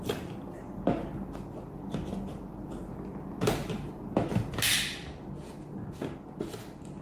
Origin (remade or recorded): recorded